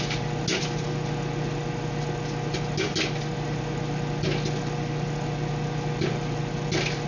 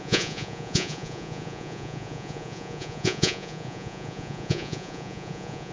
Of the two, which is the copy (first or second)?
second